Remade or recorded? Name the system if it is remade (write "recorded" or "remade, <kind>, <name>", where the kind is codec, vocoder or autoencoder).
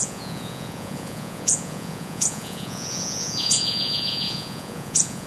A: remade, vocoder, Vocos